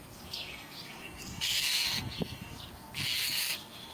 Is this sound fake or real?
fake